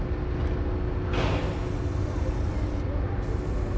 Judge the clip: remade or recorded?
recorded